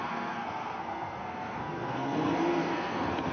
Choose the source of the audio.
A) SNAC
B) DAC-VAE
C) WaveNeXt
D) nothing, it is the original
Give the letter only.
A